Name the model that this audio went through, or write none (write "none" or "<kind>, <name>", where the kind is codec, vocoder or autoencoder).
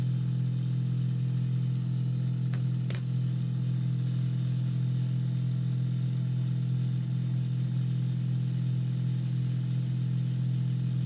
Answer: none